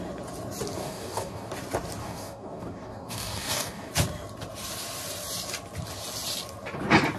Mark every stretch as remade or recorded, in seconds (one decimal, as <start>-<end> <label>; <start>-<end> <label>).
0.0-0.8 recorded; 0.8-1.5 remade; 1.5-2.0 recorded; 2.0-3.9 remade; 3.9-7.2 recorded